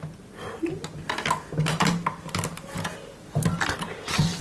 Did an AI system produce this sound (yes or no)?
no